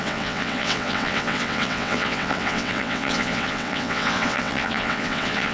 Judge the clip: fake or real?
fake